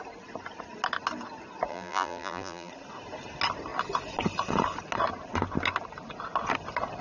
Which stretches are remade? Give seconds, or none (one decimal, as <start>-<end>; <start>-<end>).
1.7-2.7